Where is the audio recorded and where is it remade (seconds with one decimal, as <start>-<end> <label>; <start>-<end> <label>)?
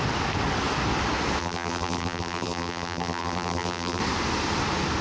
0.0-1.4 recorded; 1.4-4.0 remade; 4.0-5.0 recorded